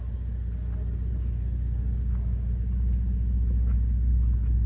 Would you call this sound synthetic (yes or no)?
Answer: no